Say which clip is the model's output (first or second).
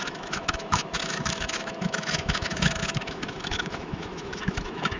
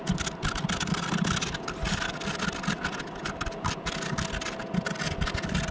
first